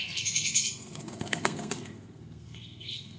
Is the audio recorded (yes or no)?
no